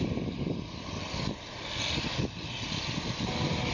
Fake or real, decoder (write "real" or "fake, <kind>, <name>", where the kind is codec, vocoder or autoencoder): real